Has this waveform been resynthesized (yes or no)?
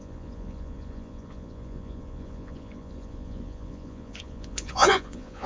yes